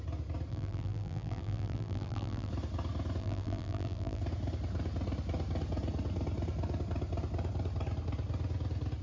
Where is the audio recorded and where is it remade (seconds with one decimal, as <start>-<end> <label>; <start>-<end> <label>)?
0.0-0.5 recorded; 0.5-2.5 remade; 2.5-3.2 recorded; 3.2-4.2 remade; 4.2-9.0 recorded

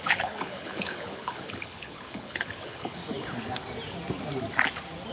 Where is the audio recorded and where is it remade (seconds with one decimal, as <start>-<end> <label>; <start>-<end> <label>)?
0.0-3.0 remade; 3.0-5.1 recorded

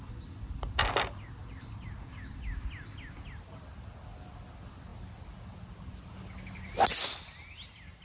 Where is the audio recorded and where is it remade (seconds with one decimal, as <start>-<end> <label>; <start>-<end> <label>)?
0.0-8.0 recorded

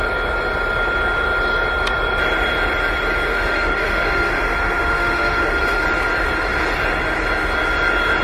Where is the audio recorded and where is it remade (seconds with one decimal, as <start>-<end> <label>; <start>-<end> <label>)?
0.0-3.3 recorded; 3.3-5.8 remade; 5.8-8.2 recorded

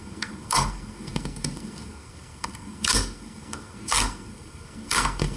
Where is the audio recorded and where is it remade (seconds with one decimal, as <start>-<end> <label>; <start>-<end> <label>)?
0.0-5.4 remade

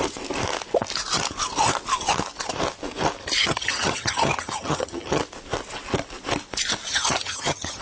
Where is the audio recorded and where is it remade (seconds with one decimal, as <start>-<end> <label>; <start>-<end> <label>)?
0.0-3.4 recorded; 3.4-5.2 remade; 5.2-6.9 recorded; 6.9-7.8 remade

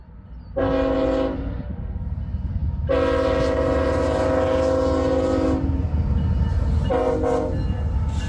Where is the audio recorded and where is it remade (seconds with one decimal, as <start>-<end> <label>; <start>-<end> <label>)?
0.0-8.3 recorded

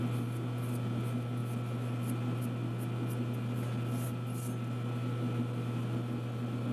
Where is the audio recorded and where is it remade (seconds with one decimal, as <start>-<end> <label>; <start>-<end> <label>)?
0.0-6.7 recorded